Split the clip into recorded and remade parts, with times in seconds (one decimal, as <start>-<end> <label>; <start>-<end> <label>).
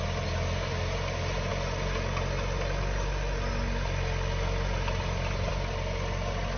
0.0-6.6 recorded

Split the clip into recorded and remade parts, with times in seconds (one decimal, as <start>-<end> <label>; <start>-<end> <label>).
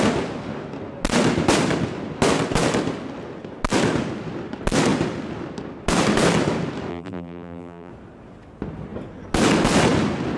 0.0-6.9 recorded; 6.9-7.9 remade; 7.9-10.4 recorded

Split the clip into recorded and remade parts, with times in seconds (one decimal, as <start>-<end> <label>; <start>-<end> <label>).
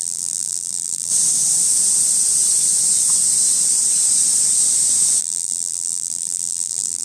0.0-1.1 remade; 1.1-5.2 recorded; 5.2-7.0 remade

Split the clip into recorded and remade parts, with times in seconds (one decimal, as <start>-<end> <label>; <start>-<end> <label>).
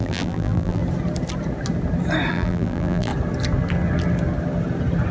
0.0-0.8 remade; 0.8-2.3 recorded; 2.3-3.1 remade; 3.1-5.1 recorded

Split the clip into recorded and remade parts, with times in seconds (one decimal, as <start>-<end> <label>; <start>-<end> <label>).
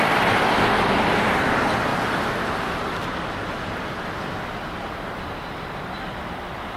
0.0-1.9 remade; 1.9-5.1 recorded; 5.1-6.8 remade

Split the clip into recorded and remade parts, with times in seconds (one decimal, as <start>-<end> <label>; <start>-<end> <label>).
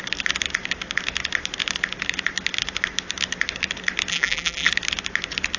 0.0-4.1 recorded; 4.1-4.7 remade; 4.7-5.6 recorded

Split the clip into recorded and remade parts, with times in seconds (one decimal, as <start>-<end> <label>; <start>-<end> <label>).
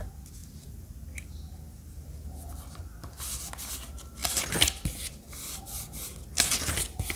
0.0-0.4 recorded; 0.4-0.9 remade; 0.9-7.2 recorded